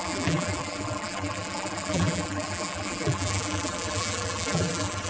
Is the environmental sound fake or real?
fake